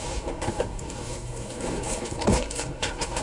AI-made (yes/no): yes